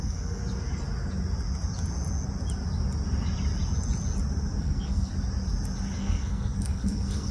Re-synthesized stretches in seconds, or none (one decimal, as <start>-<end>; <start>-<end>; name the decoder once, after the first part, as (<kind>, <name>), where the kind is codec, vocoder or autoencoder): 0.0-0.4 (codec, SNAC); 4.6-5.1; 6.0-7.3